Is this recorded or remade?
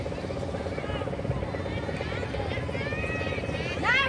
recorded